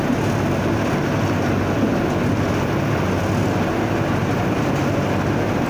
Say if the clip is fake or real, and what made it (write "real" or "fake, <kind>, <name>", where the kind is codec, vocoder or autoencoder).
real